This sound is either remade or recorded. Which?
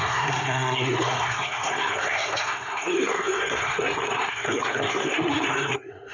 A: remade